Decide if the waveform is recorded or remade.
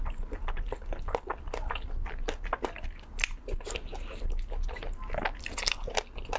recorded